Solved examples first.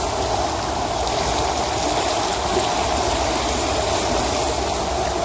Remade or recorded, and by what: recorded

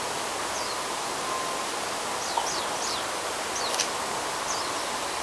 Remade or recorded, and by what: recorded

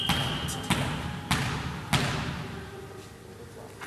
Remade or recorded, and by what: recorded